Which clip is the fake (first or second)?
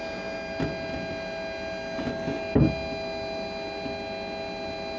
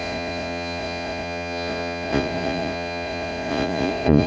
second